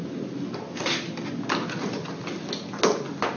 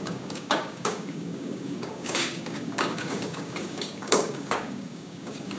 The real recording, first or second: first